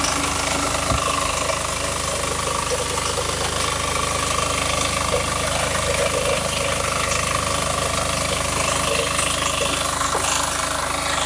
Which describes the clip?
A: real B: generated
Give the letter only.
A